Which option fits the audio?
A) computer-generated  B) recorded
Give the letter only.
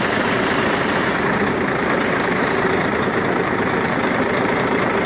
A